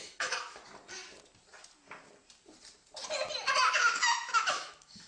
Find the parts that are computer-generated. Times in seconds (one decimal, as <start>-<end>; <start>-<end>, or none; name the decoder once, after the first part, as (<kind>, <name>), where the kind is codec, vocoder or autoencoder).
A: 0.0-0.6 (autoencoder, DAC-VAE); 3.7-5.1